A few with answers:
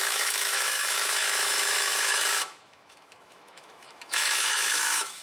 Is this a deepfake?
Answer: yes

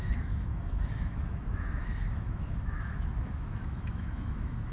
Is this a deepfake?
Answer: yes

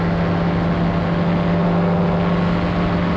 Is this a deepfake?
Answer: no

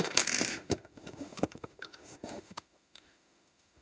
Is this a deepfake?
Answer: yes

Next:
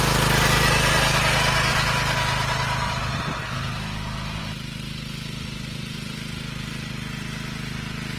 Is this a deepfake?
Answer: no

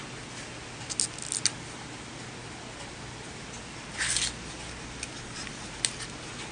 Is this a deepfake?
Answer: no